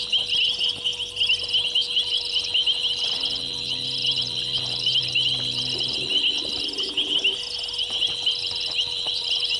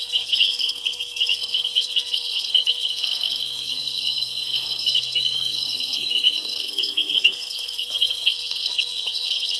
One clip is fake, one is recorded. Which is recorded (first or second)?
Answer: first